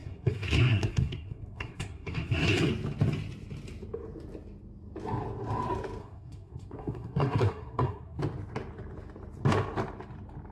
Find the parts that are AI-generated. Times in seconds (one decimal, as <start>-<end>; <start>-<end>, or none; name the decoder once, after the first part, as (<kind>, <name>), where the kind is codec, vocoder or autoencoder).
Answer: 0.0-2.7 (codec, SNAC); 6.0-8.2

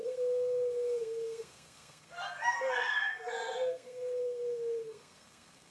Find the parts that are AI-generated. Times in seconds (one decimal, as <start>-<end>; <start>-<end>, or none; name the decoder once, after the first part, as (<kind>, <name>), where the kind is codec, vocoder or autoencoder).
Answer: 0.0-5.7 (codec, SNAC)

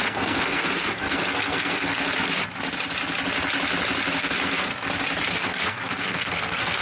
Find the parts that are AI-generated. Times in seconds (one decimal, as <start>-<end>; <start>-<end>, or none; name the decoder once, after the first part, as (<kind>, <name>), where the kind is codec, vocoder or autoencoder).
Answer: 0.0-2.1 (codec, SNAC); 4.2-4.7; 5.3-6.8

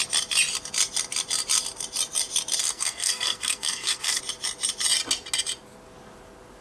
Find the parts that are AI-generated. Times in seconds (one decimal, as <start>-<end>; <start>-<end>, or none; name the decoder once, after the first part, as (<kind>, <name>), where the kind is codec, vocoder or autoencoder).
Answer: 2.6-4.2 (codec, SNAC)

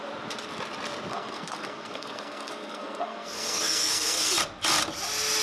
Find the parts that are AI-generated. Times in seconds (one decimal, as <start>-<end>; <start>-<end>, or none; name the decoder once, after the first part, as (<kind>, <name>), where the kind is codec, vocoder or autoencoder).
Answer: 1.1-4.3 (codec, SNAC)

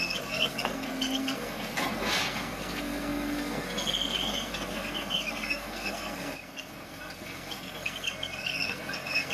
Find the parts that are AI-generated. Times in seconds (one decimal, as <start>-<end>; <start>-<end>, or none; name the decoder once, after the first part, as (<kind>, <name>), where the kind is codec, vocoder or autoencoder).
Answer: 0.0-9.3 (codec, SNAC)